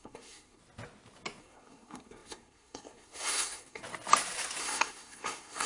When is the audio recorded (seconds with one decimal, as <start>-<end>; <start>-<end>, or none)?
0.6-1.4; 3.8-4.6